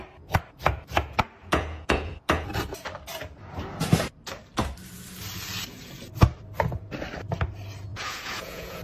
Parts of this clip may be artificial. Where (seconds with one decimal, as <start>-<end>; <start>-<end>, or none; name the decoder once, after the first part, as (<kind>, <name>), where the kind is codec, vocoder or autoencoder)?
1.4-2.5 (vocoder, Vocos); 7.9-8.8